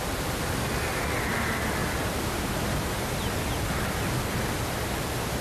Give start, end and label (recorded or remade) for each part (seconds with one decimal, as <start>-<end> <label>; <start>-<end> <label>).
0.0-5.4 recorded